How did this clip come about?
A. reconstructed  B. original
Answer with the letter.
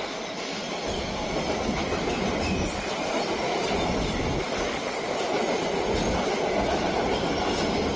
B